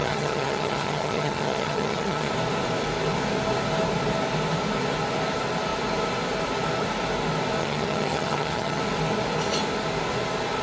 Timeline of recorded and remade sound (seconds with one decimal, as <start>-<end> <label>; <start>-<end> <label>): 0.0-2.3 remade; 2.3-7.6 recorded; 7.6-8.8 remade; 8.8-10.6 recorded